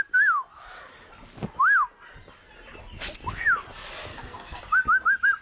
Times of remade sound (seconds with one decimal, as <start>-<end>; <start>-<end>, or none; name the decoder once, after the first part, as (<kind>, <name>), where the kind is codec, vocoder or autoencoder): 4.1-4.6 (codec, SNAC)